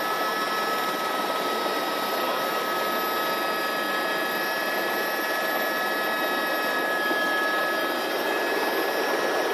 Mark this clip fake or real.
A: real